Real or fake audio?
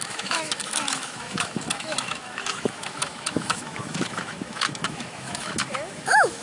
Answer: fake